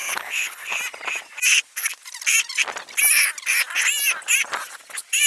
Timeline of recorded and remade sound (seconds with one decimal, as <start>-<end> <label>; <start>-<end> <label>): 0.0-0.8 remade; 0.8-5.3 recorded